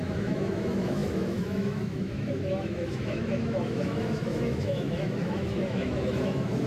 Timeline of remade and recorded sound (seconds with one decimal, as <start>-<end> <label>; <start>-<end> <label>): 0.0-6.7 remade